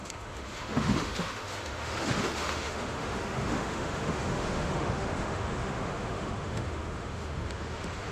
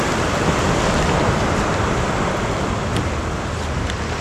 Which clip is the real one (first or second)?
second